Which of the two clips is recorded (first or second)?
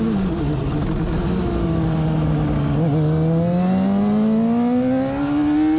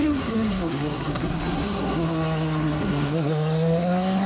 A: first